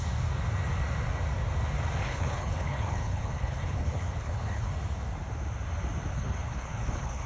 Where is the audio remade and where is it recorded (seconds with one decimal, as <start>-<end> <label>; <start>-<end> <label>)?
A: 0.0-2.0 recorded; 2.0-4.7 remade; 4.7-6.1 recorded; 6.1-7.3 remade